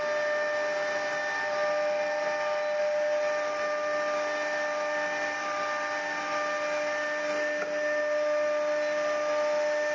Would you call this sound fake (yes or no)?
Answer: no